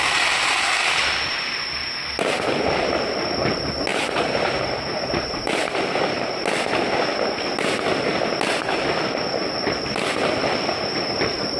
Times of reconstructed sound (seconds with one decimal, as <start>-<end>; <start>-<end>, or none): 3.9-6.4